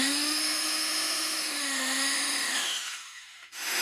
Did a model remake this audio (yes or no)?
yes